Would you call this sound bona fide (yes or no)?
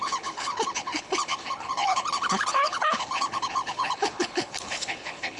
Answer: no